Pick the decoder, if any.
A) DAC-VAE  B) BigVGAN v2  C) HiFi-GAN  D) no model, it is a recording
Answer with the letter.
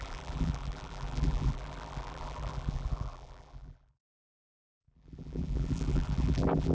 B